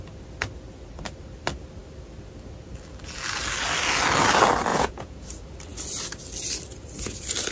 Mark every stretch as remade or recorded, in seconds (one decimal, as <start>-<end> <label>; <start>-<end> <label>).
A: 0.0-4.7 recorded; 4.7-5.2 remade; 5.2-7.5 recorded